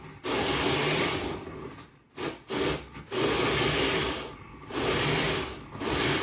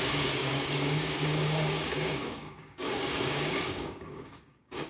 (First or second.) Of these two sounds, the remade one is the second